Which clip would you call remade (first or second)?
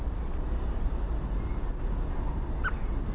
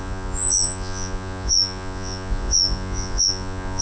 second